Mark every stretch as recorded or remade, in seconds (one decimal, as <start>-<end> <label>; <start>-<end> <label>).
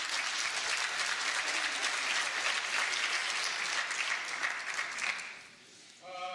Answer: 0.0-6.3 recorded